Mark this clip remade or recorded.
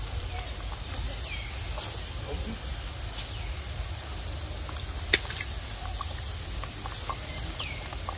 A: recorded